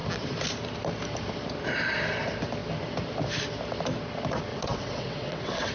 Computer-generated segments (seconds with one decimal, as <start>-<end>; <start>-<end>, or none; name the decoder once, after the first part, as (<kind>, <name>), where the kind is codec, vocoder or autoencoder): 4.5-5.7 (vocoder, WaveNeXt)